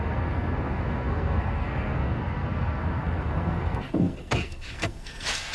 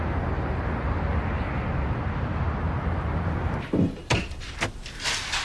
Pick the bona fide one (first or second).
second